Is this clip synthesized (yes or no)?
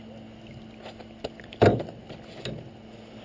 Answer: no